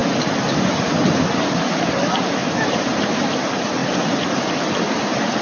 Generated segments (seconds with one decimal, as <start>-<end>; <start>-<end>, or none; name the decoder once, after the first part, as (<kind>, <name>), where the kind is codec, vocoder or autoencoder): 2.4-3.0 (vocoder, BigVGAN v2)